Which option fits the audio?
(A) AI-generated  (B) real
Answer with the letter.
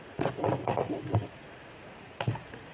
A